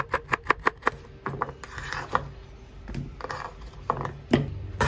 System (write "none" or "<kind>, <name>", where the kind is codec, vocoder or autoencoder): none